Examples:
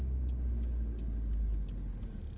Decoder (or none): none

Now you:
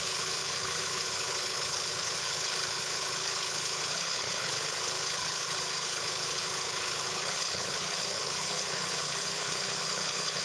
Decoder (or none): codec, HILCodec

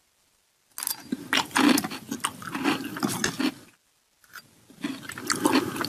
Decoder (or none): none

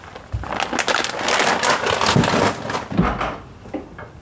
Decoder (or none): none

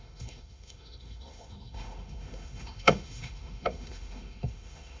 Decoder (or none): autoencoder, DAC-VAE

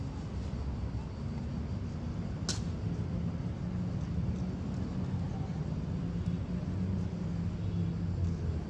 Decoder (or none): none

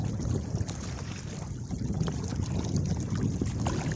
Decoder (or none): none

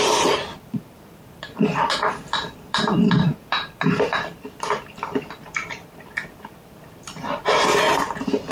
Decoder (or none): vocoder, BigVGAN v2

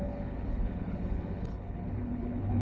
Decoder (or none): codec, HILCodec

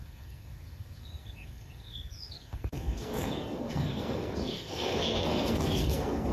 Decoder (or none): codec, SNAC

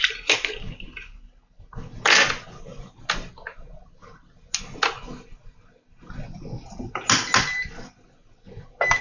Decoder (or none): none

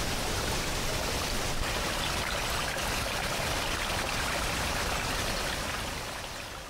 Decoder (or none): none